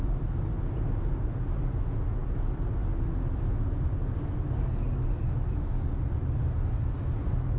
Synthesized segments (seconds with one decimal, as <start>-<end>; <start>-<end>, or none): none